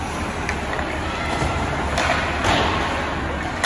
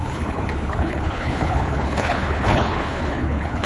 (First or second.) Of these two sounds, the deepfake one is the second